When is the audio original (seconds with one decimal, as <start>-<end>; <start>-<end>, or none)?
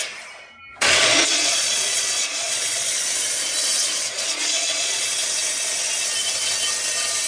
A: 0.0-0.7; 5.0-7.3